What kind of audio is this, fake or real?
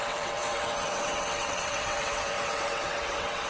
fake